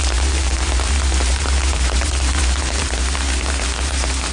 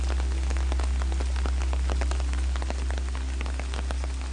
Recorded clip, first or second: second